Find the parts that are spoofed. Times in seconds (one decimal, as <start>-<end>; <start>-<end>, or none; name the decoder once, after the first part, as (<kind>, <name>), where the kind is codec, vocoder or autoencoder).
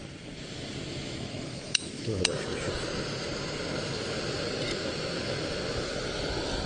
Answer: 0.9-2.2 (autoencoder, DAC-VAE)